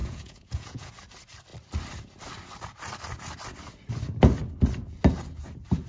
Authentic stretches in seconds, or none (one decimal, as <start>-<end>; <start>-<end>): 0.9-5.9